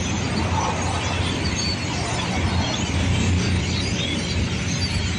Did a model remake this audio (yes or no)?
no